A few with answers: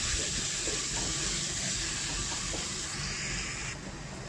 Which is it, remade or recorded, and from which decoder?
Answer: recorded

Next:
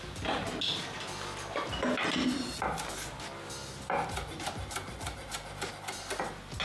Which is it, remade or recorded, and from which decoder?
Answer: recorded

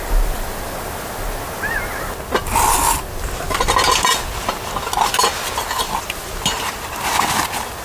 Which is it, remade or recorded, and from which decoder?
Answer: recorded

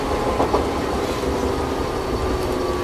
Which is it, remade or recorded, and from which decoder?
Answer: recorded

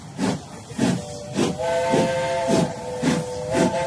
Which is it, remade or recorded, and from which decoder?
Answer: recorded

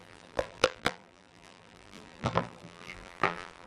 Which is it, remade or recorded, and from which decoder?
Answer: remade, vocoder, BigVGAN v2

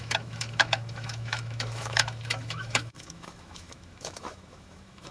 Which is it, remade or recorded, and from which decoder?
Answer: remade, autoencoder, DAC-VAE